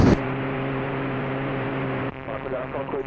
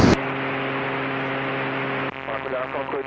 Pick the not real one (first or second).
first